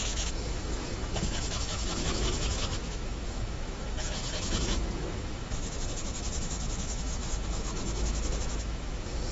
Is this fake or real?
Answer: fake